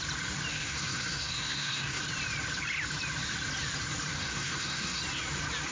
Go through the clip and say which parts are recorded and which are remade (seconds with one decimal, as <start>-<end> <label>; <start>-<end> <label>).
0.0-0.5 recorded; 0.5-2.0 remade; 2.0-4.1 recorded; 4.1-5.0 remade; 5.0-5.7 recorded